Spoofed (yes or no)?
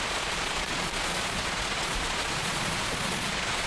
yes